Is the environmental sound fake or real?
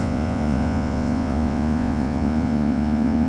fake